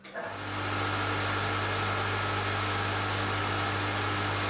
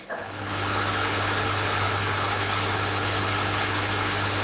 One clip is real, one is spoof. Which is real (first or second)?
first